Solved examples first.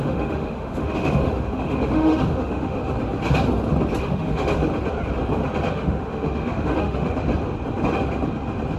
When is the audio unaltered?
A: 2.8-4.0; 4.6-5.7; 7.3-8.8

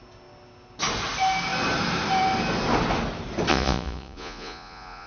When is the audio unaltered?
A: 0.0-3.5

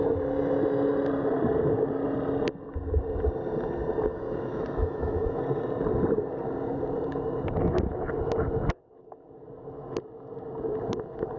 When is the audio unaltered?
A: 0.0-4.1; 5.4-11.4